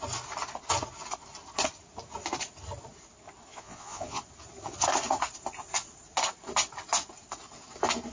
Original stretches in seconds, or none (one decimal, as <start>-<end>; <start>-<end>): 0.0-3.5; 4.2-8.1